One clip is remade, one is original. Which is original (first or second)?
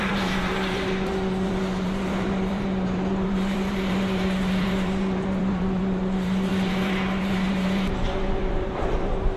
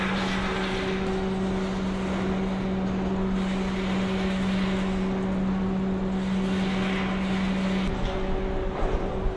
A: second